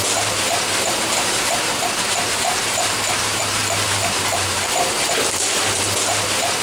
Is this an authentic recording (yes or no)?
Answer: no